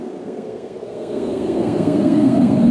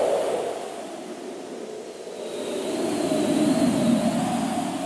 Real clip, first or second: second